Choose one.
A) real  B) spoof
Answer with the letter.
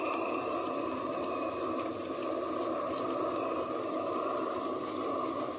A